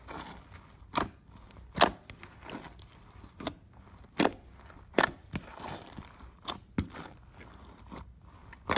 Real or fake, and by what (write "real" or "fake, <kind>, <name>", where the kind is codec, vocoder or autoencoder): real